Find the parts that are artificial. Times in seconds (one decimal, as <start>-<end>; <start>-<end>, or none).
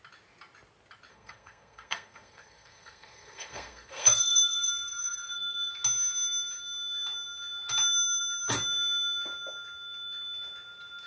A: 1.1-5.7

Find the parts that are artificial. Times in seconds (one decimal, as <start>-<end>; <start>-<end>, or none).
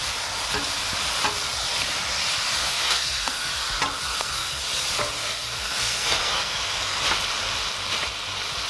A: 2.6-3.5; 4.0-4.6; 5.2-7.0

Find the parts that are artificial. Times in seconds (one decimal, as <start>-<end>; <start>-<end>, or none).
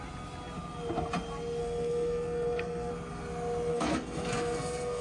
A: 1.6-2.9; 3.7-5.0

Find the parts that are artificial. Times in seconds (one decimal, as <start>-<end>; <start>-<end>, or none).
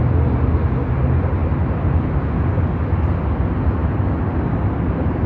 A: none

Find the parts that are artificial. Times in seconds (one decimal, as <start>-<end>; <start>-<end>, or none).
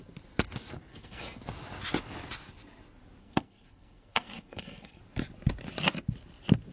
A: 0.9-1.4; 3.2-5.0